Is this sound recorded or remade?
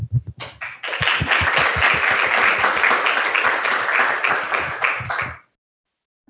recorded